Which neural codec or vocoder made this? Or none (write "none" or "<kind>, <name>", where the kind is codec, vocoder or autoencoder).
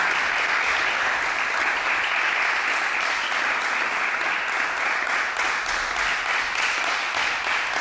none